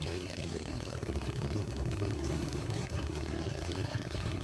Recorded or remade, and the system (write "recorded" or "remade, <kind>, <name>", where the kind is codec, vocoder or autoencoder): remade, codec, SNAC